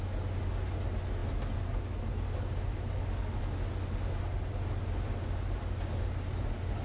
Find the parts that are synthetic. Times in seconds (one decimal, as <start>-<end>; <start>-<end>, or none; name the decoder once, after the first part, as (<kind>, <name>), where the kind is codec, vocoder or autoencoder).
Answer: none